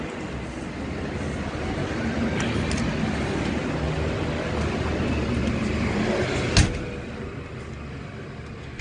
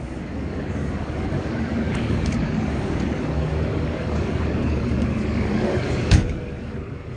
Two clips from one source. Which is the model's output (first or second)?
second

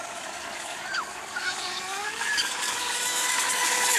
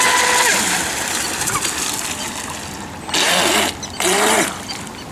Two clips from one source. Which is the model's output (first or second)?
first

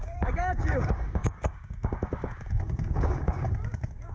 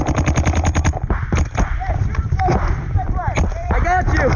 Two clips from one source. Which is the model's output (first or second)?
first